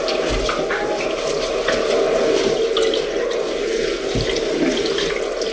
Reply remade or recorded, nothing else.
recorded